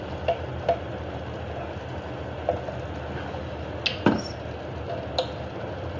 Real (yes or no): yes